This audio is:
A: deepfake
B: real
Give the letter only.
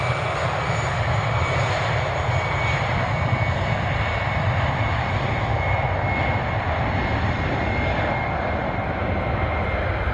B